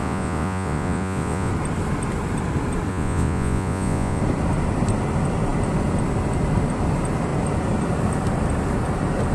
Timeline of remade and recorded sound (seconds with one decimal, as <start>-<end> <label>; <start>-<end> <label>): 0.0-1.5 remade; 1.5-2.9 recorded; 2.9-4.2 remade; 4.2-9.3 recorded